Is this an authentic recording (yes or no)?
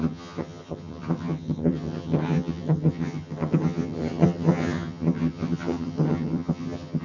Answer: no